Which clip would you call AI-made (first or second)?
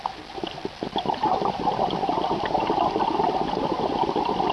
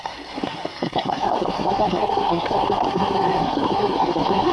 second